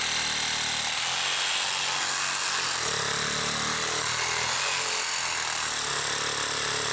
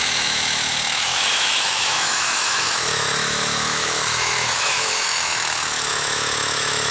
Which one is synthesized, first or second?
second